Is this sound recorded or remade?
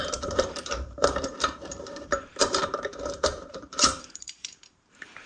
remade